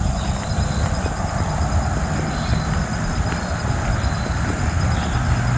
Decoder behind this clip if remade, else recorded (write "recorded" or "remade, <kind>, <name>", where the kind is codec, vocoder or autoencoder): recorded